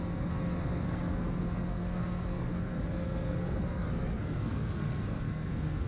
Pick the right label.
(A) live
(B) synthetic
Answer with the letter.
B